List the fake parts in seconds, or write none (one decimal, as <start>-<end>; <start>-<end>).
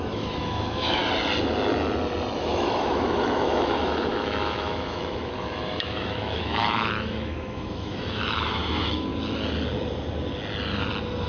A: 0.0-1.0; 2.4-9.1